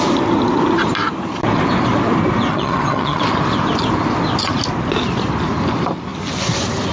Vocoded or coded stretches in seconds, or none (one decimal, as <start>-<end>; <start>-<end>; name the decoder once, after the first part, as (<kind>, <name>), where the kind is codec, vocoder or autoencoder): 2.5-3.2 (vocoder, HiFi-GAN)